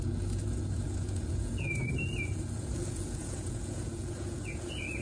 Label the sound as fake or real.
fake